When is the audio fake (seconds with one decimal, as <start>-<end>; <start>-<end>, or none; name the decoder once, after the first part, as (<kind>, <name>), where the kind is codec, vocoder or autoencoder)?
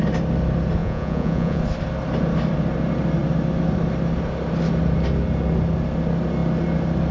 0.8-1.6 (vocoder, Vocos)